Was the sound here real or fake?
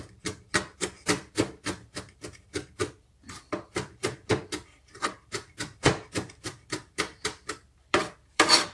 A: fake